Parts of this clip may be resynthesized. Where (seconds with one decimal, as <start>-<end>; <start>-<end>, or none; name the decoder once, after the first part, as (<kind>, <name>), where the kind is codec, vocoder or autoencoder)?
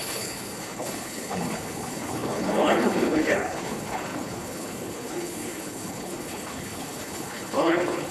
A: 0.0-8.1 (codec, HILCodec)